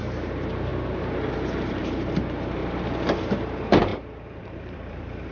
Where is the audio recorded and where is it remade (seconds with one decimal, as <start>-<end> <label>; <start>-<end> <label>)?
0.0-2.6 remade; 2.6-3.2 recorded; 3.2-5.3 remade